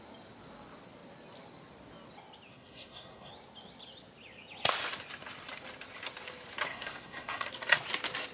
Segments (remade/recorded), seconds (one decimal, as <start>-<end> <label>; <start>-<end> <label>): 0.0-2.5 recorded; 2.5-3.3 remade; 3.3-6.7 recorded; 6.7-7.5 remade; 7.5-8.3 recorded